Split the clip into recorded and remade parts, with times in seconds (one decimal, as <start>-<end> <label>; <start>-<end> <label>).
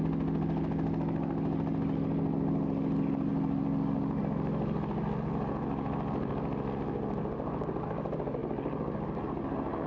0.0-9.9 recorded